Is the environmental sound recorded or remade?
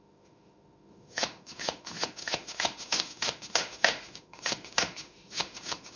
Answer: remade